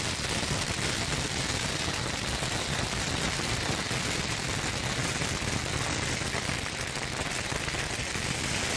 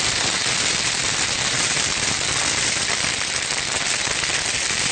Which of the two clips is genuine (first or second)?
first